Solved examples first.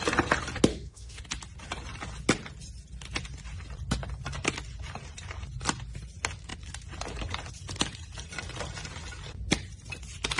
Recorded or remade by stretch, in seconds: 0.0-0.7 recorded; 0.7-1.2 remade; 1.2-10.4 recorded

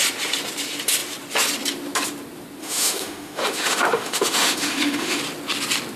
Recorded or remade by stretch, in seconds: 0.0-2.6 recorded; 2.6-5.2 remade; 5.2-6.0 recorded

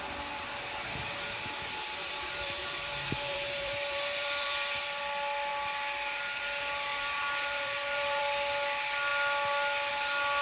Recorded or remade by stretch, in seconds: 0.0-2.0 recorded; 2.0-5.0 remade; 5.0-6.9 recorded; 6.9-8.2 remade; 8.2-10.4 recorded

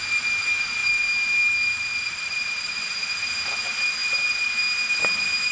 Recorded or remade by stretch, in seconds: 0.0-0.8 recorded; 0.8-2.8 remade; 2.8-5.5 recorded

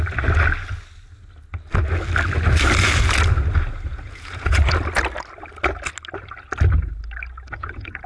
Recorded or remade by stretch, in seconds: 0.0-3.9 recorded; 3.9-4.6 remade; 4.6-7.6 recorded; 7.6-8.1 remade